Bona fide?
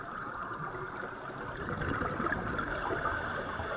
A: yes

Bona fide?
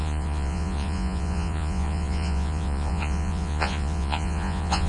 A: no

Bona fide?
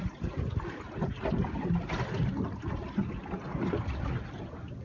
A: yes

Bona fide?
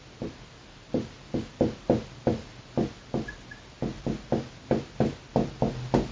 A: yes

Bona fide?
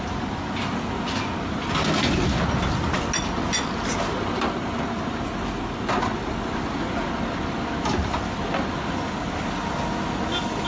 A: yes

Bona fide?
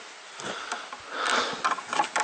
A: yes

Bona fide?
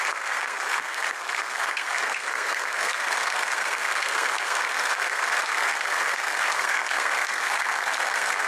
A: no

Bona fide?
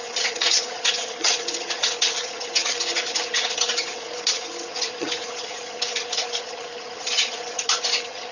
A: no